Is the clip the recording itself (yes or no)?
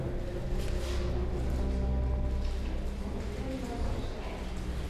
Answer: yes